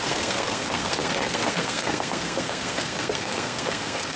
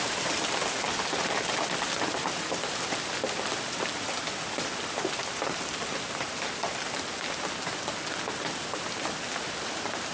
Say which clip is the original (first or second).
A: second